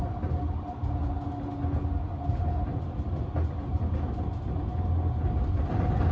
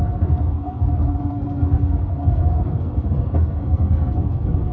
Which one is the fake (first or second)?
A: second